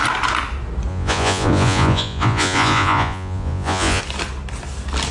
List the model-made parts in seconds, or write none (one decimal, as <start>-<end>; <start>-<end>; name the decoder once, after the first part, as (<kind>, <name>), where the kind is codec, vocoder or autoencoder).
0.9-4.0 (vocoder, Vocos)